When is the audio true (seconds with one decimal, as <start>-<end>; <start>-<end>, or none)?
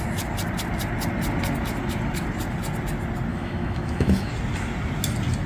0.0-3.3; 4.3-5.5